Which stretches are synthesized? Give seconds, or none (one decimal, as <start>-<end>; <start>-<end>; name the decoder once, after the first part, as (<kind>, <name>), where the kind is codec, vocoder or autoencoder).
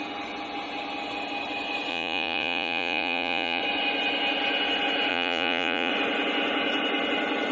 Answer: 1.9-3.6 (vocoder, Vocos); 5.1-5.9